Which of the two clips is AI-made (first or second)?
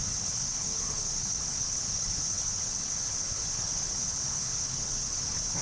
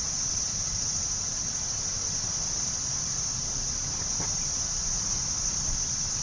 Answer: first